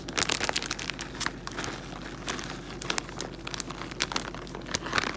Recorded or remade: recorded